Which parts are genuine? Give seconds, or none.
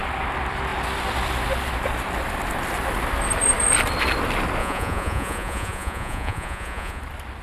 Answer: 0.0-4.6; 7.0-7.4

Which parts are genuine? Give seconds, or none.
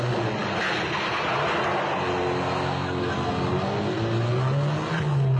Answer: 0.0-5.4